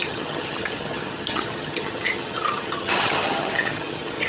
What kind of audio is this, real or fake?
fake